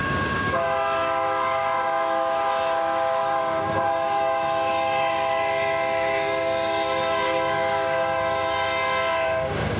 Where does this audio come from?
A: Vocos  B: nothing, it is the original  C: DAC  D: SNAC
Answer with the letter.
C